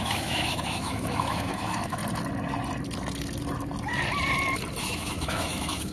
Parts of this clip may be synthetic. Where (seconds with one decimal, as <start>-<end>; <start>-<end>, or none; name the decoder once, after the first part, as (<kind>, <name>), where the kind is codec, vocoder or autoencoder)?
0.0-2.0 (autoencoder, DAC-VAE); 4.8-5.9